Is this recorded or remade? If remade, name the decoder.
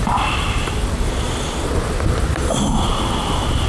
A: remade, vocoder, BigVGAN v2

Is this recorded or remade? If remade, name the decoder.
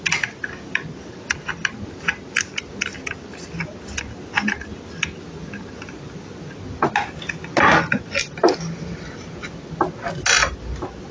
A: recorded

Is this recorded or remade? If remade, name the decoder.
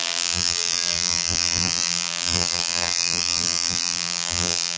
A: remade, vocoder, BigVGAN v2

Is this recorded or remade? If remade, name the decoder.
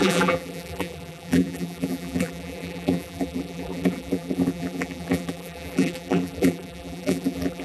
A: remade, vocoder, BigVGAN v2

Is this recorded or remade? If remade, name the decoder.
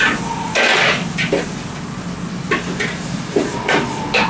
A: recorded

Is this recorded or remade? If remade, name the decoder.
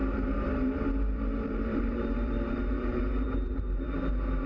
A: remade, vocoder, BigVGAN v2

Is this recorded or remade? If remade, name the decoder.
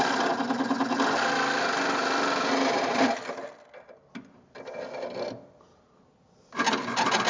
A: recorded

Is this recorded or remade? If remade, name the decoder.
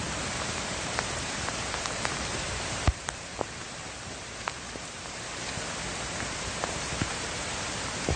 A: remade, vocoder, BigVGAN v2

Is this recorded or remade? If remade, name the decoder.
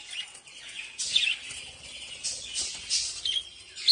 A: recorded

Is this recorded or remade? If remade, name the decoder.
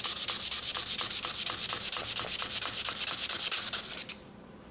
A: remade, vocoder, BigVGAN v2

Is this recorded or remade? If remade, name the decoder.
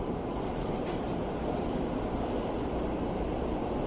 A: remade, vocoder, BigVGAN v2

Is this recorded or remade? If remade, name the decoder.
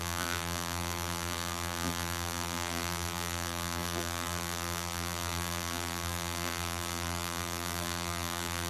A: remade, vocoder, BigVGAN v2